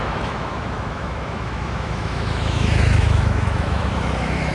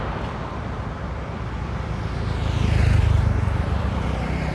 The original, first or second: second